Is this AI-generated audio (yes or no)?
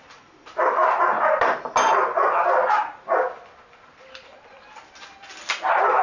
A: no